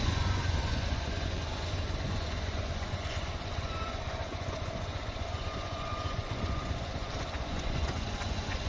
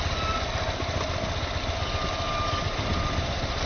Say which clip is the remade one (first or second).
first